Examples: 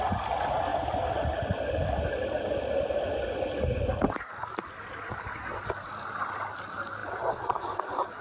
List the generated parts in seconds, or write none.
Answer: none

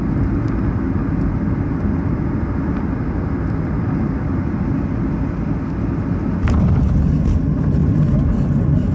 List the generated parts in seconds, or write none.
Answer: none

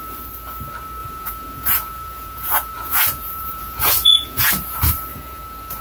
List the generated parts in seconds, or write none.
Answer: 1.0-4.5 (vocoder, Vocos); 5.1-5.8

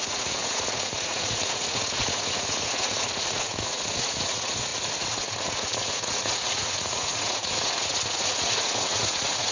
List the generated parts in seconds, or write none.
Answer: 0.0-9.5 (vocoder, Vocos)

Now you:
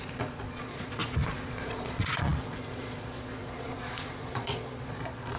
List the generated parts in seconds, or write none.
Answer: 0.0-5.4 (vocoder, Vocos)

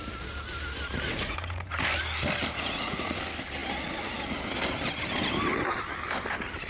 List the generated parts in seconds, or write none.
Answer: 1.1-1.8 (vocoder, Vocos); 2.5-3.2

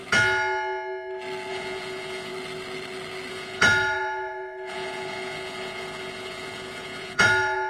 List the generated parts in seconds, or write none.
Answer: 1.5-2.3 (vocoder, Vocos); 3.3-7.7